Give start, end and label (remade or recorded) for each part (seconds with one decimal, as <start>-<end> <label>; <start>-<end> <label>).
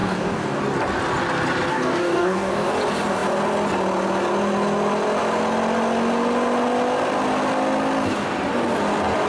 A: 0.0-0.6 remade; 0.6-1.7 recorded; 1.7-2.7 remade; 2.7-9.3 recorded